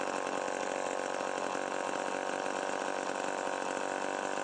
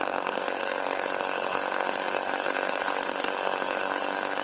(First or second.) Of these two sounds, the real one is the first